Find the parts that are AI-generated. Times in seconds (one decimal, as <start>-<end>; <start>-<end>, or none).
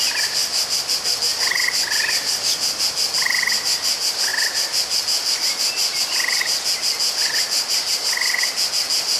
none